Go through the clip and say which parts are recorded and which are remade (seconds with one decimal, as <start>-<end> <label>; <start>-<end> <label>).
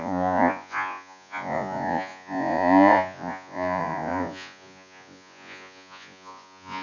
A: 0.0-6.8 remade